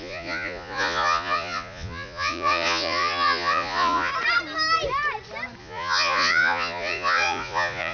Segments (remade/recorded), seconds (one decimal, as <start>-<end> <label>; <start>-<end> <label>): 0.0-4.1 remade; 4.1-5.6 recorded; 5.6-7.9 remade